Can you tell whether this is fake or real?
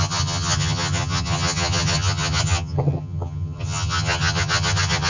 fake